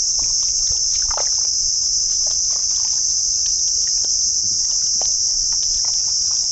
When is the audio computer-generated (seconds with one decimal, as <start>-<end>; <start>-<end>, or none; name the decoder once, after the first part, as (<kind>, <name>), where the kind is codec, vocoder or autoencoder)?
none